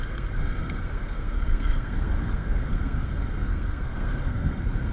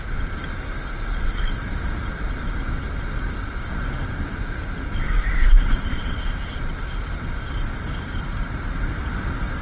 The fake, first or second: first